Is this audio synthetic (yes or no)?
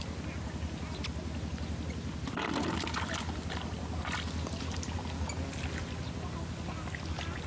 no